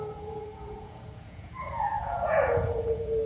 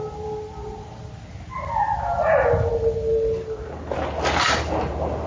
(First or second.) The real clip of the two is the second